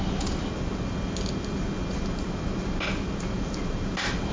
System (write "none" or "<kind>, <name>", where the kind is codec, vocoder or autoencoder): none